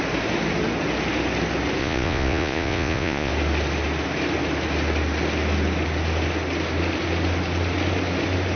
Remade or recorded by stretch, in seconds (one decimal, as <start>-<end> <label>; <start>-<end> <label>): 0.0-1.8 recorded; 1.8-3.3 remade; 3.3-8.6 recorded